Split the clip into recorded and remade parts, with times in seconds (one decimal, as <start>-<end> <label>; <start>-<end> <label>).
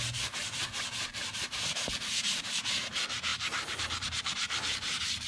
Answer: 0.0-5.3 remade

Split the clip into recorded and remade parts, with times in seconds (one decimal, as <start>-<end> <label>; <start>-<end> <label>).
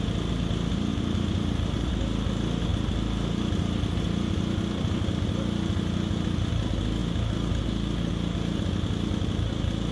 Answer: 0.0-0.9 recorded; 0.9-1.9 remade; 1.9-9.9 recorded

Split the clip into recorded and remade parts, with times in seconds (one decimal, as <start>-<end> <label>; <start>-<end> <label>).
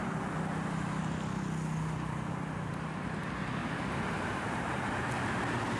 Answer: 0.0-3.6 recorded; 3.6-4.9 remade; 4.9-5.8 recorded